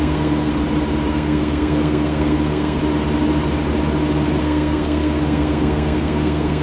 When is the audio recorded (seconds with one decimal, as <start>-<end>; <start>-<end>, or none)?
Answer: 0.5-1.1; 2.8-4.4